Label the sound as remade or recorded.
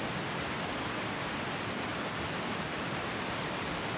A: recorded